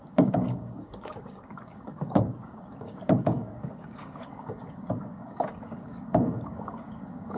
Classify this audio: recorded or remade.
remade